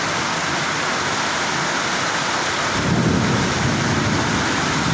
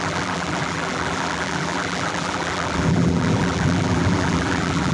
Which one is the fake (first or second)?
second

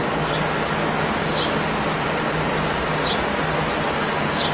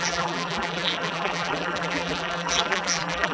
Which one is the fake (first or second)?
second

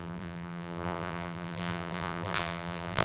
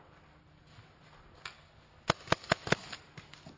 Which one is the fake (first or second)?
first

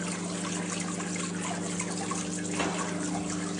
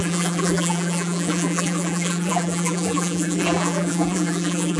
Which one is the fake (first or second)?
second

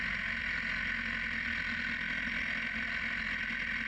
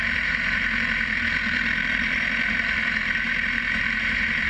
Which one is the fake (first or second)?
second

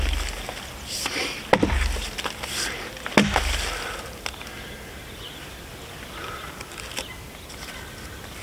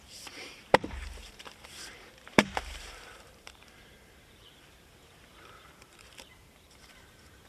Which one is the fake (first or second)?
second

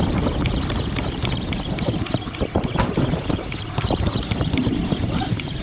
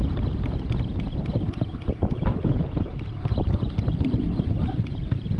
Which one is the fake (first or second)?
first